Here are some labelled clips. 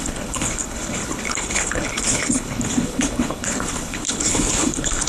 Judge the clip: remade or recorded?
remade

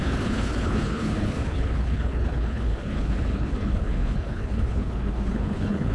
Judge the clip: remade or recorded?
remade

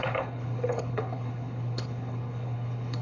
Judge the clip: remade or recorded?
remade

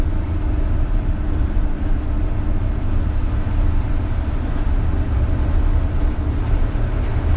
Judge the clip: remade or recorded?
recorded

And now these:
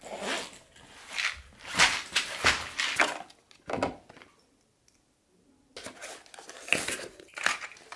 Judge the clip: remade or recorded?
recorded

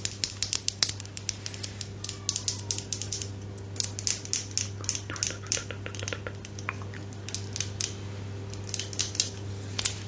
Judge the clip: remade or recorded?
recorded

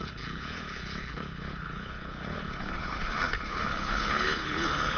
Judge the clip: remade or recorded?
remade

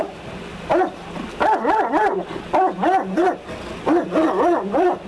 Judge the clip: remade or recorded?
recorded